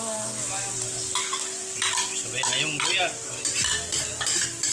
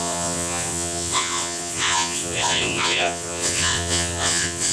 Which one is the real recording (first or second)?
first